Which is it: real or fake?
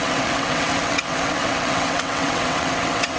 fake